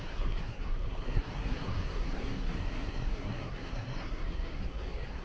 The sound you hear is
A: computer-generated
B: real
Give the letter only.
A